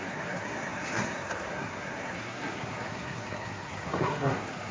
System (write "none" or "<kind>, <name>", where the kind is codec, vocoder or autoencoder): codec, SNAC